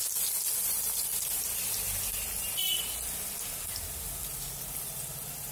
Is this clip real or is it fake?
real